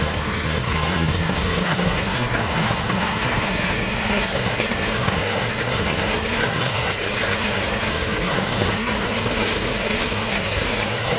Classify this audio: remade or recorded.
remade